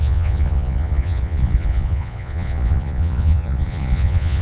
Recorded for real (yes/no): no